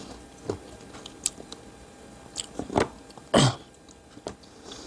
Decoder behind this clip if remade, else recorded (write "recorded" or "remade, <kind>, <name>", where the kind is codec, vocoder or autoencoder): recorded